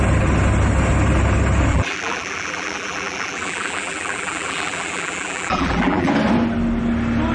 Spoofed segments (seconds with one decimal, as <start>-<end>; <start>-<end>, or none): 1.7-6.1